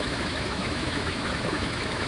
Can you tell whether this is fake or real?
fake